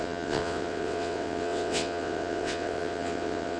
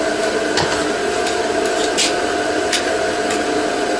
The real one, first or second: second